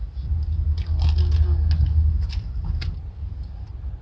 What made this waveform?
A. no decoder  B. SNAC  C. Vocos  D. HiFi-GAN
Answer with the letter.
A